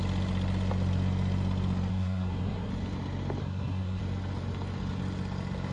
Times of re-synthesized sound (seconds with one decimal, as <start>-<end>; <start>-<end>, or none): 1.9-2.7; 3.4-4.0